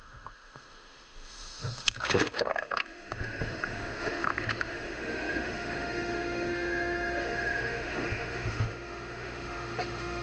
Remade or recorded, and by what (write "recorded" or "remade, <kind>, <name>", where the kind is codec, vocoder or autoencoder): remade, autoencoder, DAC-VAE